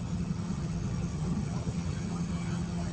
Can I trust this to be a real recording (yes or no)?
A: no